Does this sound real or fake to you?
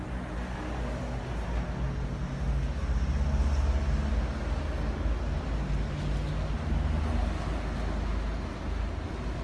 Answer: real